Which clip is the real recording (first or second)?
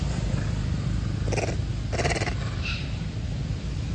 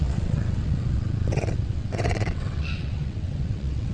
first